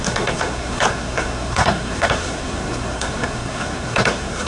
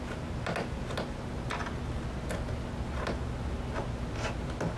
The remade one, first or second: first